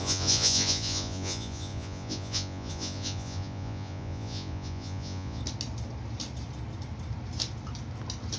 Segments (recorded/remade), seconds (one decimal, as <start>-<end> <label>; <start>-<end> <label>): 0.0-5.4 remade; 5.4-8.4 recorded